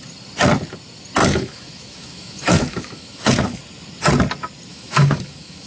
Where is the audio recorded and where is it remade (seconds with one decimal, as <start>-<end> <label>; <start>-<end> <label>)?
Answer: 0.0-1.2 recorded; 1.2-3.6 remade; 3.6-4.7 recorded; 4.7-5.7 remade